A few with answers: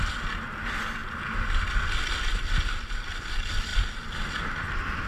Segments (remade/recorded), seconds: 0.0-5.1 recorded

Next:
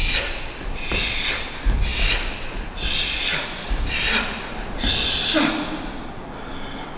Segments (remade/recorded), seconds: 0.0-7.0 recorded

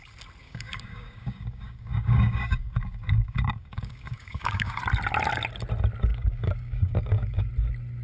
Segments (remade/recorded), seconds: 0.0-0.4 recorded; 0.4-4.8 remade; 4.8-6.1 recorded; 6.1-7.5 remade; 7.5-8.0 recorded

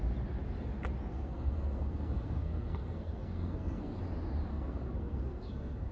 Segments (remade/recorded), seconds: 0.0-1.1 recorded; 1.1-4.0 remade; 4.0-4.5 recorded; 4.5-5.9 remade

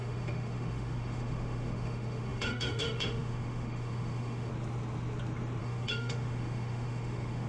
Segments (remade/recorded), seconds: 0.0-4.5 remade; 4.5-5.6 recorded; 5.6-7.5 remade

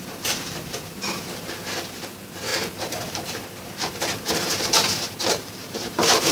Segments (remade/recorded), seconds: 0.0-6.3 remade

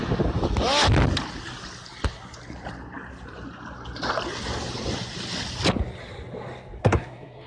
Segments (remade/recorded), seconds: 0.0-6.8 recorded; 6.8-7.5 remade

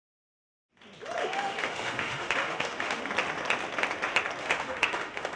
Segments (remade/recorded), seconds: 0.0-1.2 recorded; 1.2-3.0 remade; 3.0-4.4 recorded; 4.4-5.4 remade